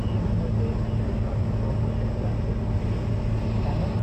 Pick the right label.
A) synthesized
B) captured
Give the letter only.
B